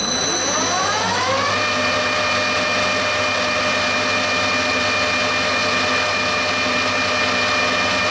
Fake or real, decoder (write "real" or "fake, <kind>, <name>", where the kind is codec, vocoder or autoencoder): real